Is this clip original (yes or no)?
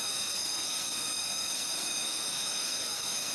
no